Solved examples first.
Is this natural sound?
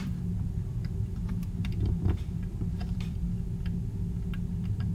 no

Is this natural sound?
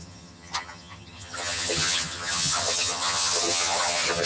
no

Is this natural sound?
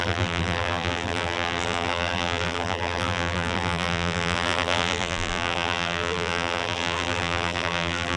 no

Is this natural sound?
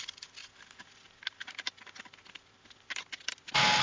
yes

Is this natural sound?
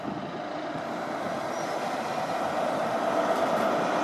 yes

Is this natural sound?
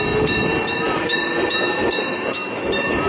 no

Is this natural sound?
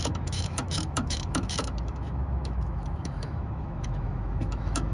no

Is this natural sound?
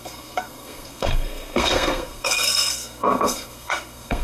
no